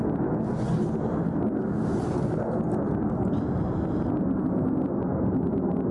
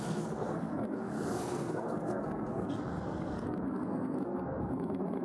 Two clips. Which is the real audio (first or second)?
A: first